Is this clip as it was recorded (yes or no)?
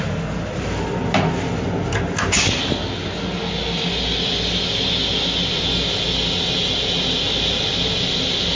yes